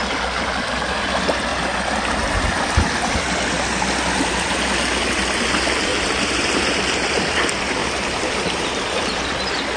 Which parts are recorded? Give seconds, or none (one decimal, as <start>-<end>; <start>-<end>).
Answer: 0.0-5.9; 6.7-7.8; 9.2-9.8